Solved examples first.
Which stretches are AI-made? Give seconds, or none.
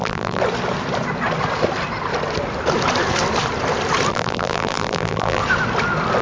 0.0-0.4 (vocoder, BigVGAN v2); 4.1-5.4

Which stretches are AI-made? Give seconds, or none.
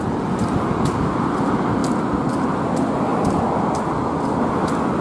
none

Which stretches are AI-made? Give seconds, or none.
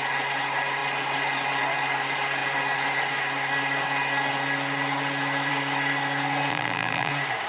6.5-7.1 (vocoder, BigVGAN v2)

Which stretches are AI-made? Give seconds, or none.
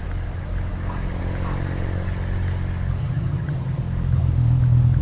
3.0-3.8 (vocoder, HiFi-GAN)